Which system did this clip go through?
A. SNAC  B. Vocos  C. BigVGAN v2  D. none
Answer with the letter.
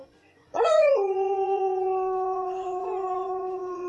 B